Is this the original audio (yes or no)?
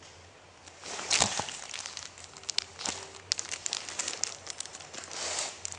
yes